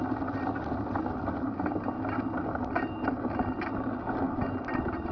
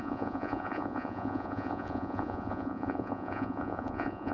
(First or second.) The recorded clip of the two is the first